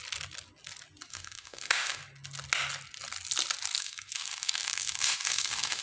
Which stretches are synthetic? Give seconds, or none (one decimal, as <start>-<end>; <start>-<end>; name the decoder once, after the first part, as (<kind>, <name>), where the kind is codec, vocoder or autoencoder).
1.1-2.0 (autoencoder, DAC-VAE); 3.8-5.8